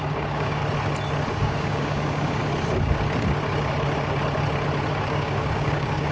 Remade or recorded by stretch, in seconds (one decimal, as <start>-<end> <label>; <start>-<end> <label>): 0.0-0.6 remade; 0.6-1.3 recorded; 1.3-2.4 remade; 2.4-4.9 recorded; 4.9-6.1 remade